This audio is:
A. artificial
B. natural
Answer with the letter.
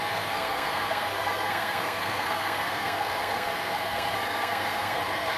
A